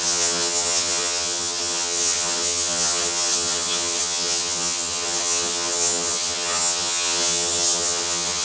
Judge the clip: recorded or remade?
remade